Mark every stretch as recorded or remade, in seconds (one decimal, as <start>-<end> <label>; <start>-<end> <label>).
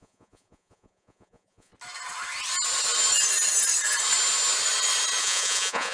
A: 0.0-1.7 remade; 1.7-5.2 recorded; 5.2-5.9 remade